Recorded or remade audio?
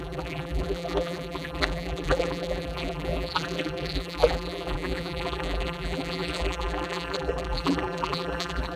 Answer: remade